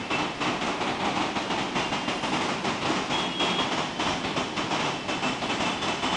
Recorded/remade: recorded